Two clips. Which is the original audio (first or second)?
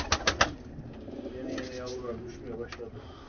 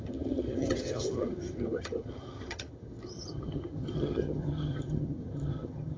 first